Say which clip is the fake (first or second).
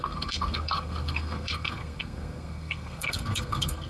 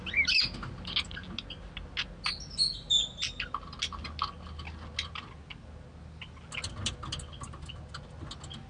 first